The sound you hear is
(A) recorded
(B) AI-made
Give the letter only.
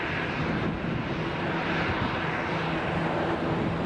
A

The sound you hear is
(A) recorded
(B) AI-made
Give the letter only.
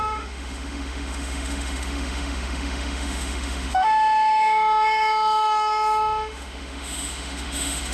B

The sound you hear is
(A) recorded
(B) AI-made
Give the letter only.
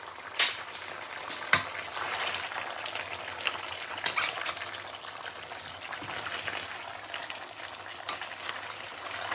A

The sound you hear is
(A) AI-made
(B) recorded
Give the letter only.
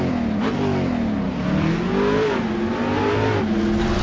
B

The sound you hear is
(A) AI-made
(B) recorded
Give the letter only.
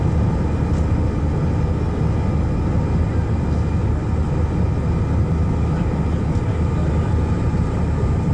B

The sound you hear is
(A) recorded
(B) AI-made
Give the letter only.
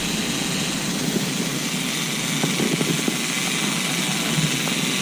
A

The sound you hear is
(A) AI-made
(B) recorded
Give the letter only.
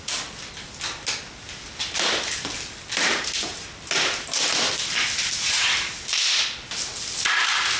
B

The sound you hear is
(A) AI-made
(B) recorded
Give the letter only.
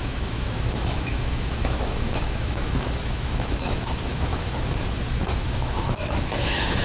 A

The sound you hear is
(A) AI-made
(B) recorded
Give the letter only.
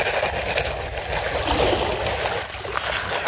B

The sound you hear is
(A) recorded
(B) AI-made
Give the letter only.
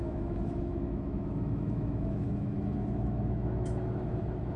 B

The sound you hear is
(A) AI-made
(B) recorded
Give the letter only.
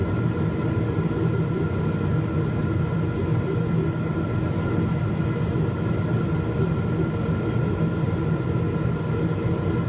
B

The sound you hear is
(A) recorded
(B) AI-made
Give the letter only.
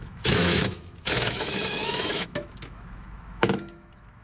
B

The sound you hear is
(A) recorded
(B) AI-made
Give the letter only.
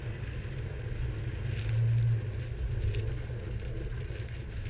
A